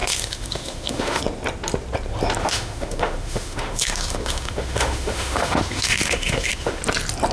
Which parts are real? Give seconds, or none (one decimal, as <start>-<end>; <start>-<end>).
1.2-2.4; 6.8-7.3